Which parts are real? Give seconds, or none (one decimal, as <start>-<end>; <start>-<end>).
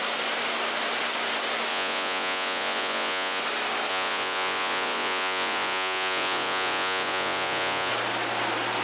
0.0-1.7; 3.4-3.9; 7.9-8.8